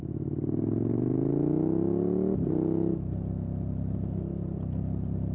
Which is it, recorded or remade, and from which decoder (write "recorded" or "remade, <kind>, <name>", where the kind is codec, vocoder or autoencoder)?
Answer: recorded